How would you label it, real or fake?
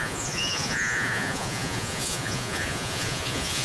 fake